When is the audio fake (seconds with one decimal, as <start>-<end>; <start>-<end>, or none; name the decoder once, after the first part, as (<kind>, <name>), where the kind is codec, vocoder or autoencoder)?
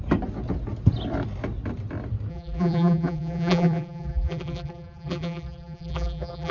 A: 2.3-6.5 (vocoder, BigVGAN v2)